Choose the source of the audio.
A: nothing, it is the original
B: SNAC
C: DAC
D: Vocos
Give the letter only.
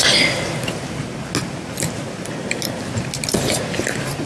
A